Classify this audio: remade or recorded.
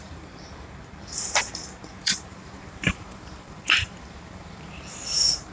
remade